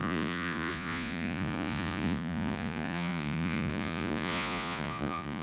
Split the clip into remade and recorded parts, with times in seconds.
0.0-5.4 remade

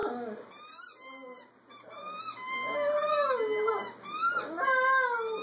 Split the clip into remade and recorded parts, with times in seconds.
0.0-5.4 recorded

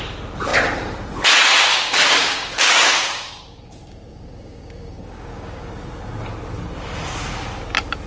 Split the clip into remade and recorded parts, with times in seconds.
0.0-1.7 recorded; 1.7-3.4 remade; 3.4-4.1 recorded; 4.1-5.7 remade; 5.7-8.1 recorded

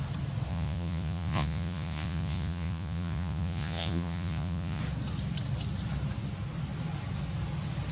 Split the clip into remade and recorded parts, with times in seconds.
0.0-0.5 recorded; 0.5-4.8 remade; 4.8-7.9 recorded

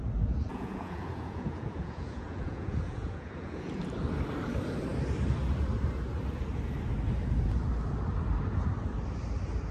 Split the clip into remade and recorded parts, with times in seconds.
0.0-0.5 recorded; 0.5-3.8 remade; 3.8-9.7 recorded

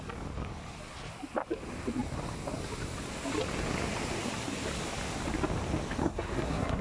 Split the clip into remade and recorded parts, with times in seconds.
0.0-6.0 recorded; 6.0-6.8 remade

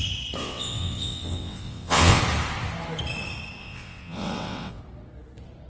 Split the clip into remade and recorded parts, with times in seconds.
0.0-0.4 recorded; 0.4-2.2 remade; 2.2-3.6 recorded; 3.6-4.8 remade; 4.8-5.7 recorded

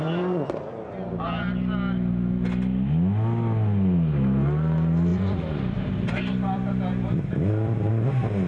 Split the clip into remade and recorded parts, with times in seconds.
0.0-5.1 recorded; 5.1-7.9 remade; 7.9-8.5 recorded